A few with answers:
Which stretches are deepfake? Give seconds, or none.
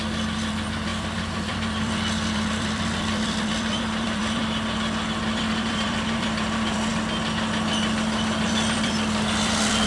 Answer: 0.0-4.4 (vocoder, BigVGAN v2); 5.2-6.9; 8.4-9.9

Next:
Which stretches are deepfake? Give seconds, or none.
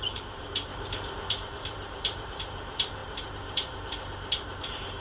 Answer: 0.0-0.7 (vocoder, BigVGAN v2); 1.3-5.0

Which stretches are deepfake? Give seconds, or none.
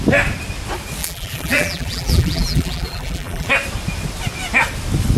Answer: 1.0-3.5 (vocoder, BigVGAN v2)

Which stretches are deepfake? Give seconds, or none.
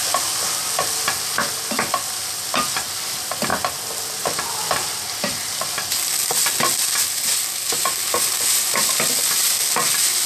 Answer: none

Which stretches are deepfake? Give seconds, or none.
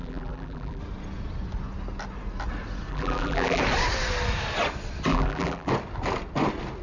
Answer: 0.0-0.8 (vocoder, BigVGAN v2); 2.9-3.6; 5.1-5.7